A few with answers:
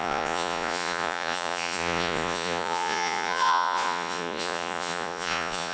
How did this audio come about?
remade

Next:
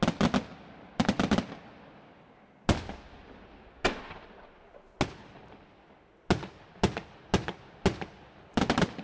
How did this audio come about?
recorded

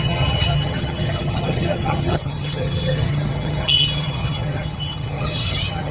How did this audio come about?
remade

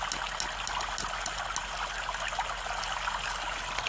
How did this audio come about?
recorded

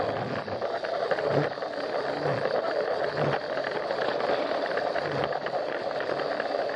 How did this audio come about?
recorded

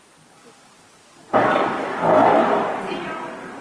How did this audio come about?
remade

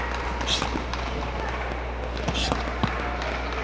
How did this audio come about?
recorded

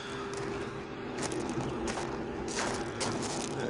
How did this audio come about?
recorded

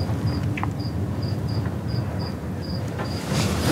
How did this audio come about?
recorded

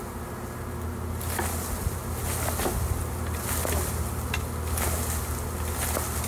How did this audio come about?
recorded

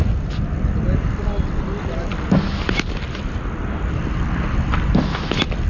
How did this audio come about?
recorded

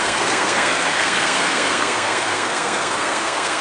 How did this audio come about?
remade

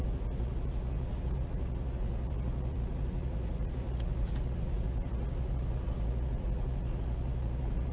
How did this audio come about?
remade